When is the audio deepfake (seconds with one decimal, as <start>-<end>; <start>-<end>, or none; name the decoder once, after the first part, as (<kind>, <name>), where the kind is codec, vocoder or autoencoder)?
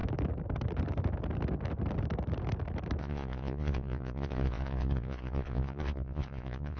3.0-6.8 (vocoder, Vocos)